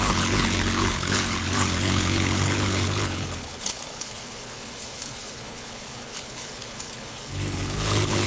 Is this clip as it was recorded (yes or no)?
no